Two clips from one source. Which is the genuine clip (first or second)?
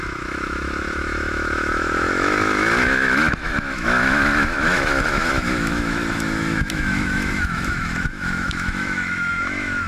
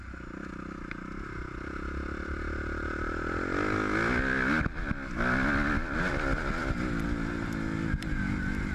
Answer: second